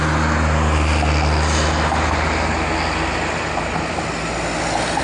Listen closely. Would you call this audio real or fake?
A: real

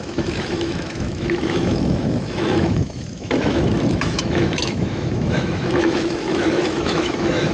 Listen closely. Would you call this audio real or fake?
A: fake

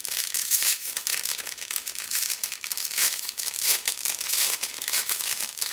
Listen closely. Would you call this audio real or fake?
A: fake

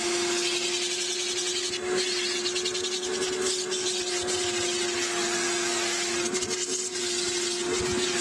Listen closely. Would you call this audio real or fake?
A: real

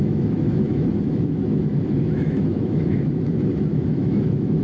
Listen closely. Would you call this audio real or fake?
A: fake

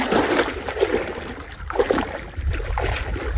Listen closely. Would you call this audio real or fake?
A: real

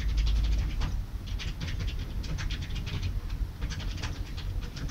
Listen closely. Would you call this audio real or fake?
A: real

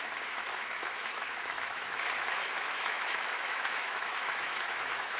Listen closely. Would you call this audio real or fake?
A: fake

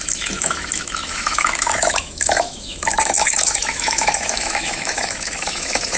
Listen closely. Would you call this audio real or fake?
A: fake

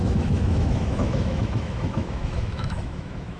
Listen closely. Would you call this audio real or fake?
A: fake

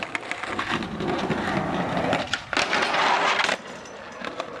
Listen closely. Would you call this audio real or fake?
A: real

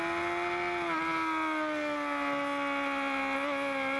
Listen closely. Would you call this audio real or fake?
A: real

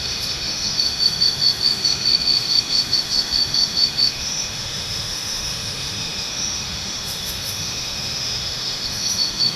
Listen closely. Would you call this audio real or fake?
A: fake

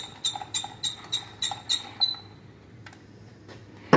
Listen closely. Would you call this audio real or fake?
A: real